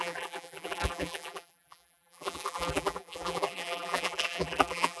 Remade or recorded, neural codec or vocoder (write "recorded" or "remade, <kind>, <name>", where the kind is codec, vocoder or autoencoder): remade, vocoder, BigVGAN v2